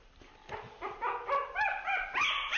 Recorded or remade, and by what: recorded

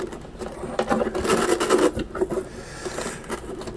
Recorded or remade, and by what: recorded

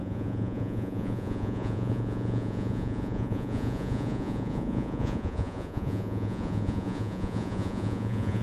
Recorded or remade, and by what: remade, vocoder, Vocos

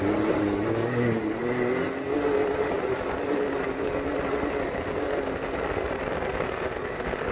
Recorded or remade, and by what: recorded